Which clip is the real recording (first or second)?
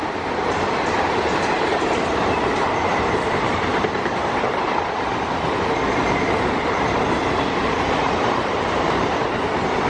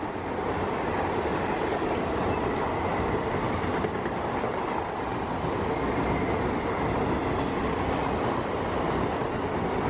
second